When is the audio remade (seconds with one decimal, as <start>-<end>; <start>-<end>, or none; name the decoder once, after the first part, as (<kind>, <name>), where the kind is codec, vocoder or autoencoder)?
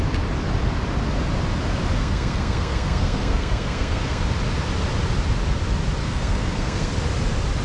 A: 2.0-4.2 (codec, SNAC); 6.0-6.9